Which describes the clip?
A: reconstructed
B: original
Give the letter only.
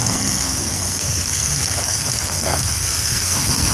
A